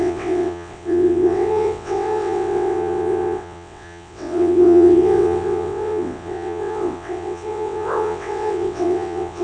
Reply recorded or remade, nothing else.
remade